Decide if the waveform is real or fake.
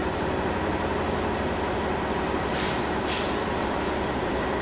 fake